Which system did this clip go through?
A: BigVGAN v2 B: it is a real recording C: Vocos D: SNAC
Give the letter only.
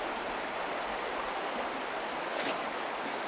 B